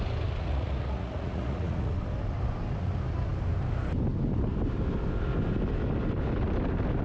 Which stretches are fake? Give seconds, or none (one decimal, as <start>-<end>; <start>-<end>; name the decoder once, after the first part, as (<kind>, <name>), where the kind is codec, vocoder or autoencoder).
0.4-1.9 (vocoder, Vocos)